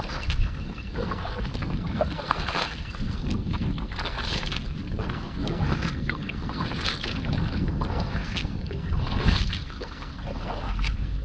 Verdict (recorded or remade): remade